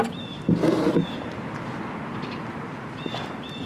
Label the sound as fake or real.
real